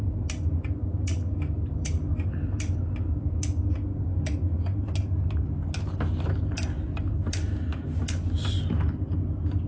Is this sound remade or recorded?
recorded